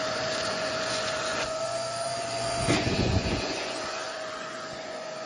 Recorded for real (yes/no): no